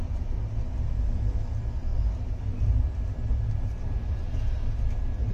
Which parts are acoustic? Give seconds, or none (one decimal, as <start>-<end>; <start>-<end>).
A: 0.0-5.3